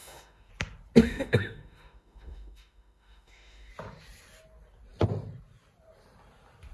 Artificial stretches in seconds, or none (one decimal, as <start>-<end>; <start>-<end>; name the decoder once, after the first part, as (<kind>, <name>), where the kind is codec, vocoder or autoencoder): 0.0-0.5 (autoencoder, DAC-VAE); 1.0-3.7